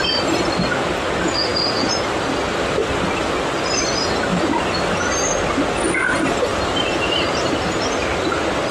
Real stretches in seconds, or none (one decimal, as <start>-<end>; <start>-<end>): 0.0-6.5